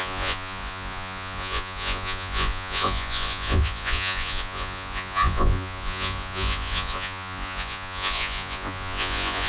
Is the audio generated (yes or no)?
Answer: yes